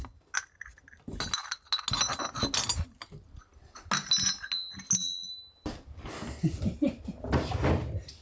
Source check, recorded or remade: recorded